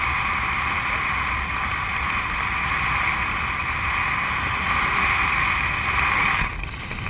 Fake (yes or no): no